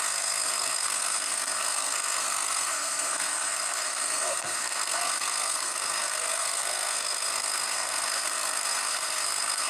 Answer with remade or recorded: remade